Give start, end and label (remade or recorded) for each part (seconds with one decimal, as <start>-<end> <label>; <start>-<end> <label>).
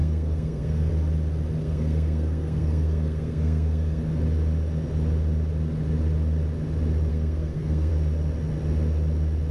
0.0-0.9 remade; 0.9-1.6 recorded; 1.6-4.0 remade; 4.0-7.1 recorded; 7.1-7.9 remade; 7.9-9.5 recorded